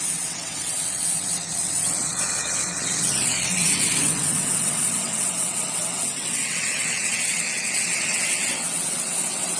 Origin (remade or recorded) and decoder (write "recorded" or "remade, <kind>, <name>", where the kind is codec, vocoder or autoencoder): remade, vocoder, WaveNeXt